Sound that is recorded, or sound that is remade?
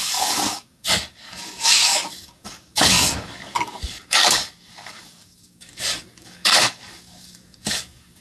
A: remade